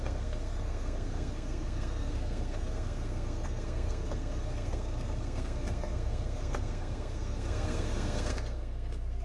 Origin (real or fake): fake